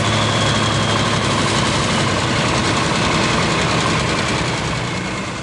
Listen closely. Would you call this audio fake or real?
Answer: real